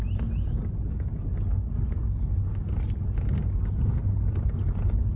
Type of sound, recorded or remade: recorded